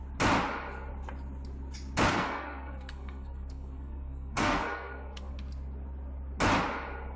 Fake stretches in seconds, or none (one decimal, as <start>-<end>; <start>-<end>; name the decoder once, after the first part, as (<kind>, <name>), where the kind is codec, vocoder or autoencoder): 2.1-5.3 (codec, SNAC)